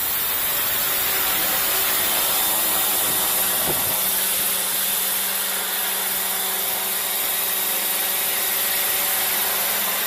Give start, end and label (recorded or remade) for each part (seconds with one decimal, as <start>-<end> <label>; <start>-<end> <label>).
0.0-10.1 recorded